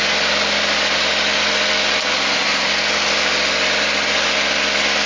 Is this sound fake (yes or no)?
no